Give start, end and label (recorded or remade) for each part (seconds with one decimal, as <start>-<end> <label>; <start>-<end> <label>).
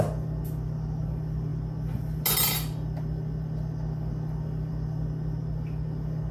0.0-6.3 recorded